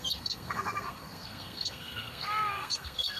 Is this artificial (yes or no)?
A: yes